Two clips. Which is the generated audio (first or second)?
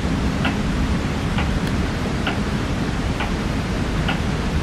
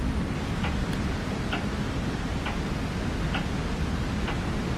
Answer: first